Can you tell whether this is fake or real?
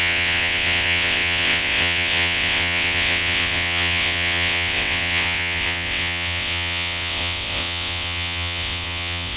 fake